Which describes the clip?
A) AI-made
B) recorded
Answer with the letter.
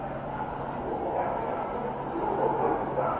B